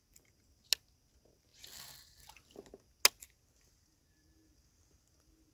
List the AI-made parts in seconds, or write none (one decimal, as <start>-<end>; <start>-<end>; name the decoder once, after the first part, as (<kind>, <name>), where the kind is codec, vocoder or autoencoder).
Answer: none